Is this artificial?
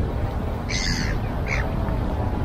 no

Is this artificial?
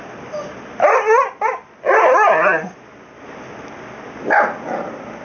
no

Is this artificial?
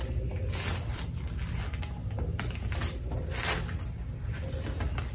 no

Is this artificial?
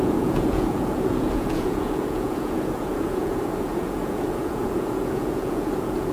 yes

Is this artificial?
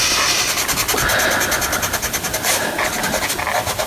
no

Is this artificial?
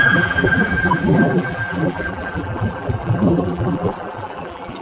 yes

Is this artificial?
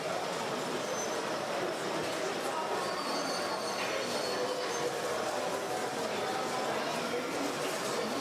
no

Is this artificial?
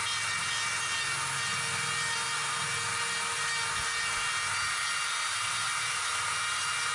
no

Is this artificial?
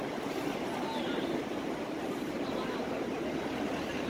no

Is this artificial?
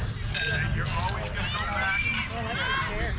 no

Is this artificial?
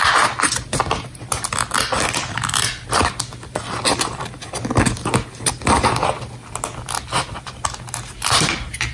no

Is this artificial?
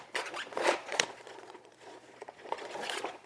yes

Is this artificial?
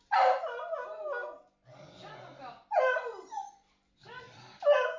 no